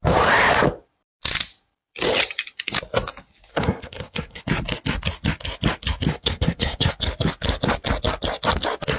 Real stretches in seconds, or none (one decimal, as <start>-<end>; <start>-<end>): 0.0-3.5; 4.4-6.1; 6.9-9.0